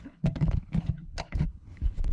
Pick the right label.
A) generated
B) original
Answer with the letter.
A